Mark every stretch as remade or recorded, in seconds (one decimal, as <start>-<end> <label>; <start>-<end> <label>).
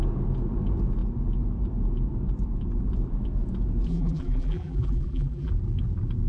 0.0-3.9 recorded; 3.9-5.5 remade; 5.5-6.3 recorded